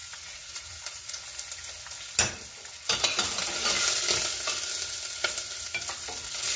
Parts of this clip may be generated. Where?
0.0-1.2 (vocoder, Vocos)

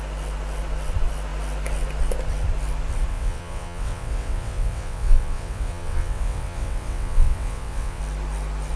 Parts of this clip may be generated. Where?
3.1-8.0 (vocoder, WaveNeXt)

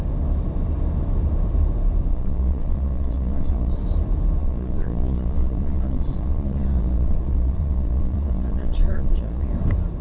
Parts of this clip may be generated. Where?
2.1-3.8 (vocoder, Vocos); 4.4-9.5

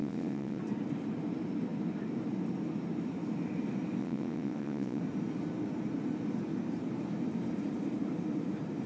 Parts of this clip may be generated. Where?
0.0-0.6 (vocoder, WaveNeXt); 4.0-5.0

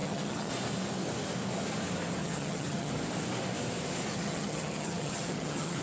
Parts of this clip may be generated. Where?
0.0-0.5 (vocoder, HiFi-GAN); 2.2-2.9; 4.1-5.8

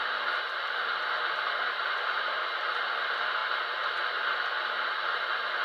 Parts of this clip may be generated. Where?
none